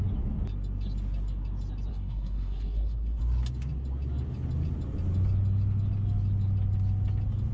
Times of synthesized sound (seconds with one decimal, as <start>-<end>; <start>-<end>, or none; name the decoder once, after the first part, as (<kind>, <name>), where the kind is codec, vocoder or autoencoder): 1.9-3.2 (codec, SNAC)